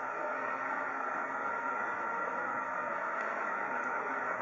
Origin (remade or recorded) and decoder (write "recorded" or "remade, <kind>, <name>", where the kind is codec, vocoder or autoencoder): remade, codec, SNAC